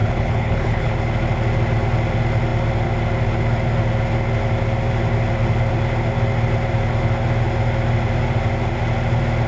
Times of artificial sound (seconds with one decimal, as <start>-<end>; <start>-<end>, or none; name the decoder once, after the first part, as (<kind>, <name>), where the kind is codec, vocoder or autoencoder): 0.0-0.9 (codec, HILCodec)

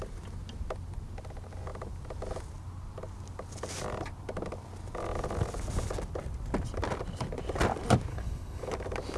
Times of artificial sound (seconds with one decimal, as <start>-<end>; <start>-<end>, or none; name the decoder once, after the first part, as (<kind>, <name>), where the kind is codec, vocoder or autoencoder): 8.1-8.7 (codec, HILCodec)

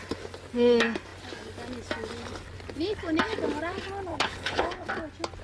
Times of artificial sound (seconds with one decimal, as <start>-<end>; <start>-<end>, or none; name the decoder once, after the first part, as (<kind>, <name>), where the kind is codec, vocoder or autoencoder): 4.1-4.9 (codec, HILCodec)